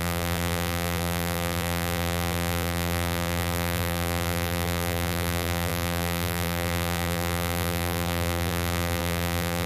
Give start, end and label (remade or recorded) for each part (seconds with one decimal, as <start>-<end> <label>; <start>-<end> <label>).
0.0-9.7 remade